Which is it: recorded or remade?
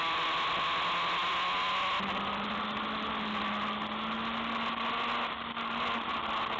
recorded